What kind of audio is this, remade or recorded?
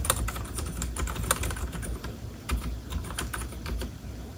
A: recorded